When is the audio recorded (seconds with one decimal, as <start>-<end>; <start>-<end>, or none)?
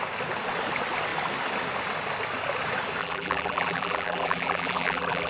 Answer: 0.0-3.0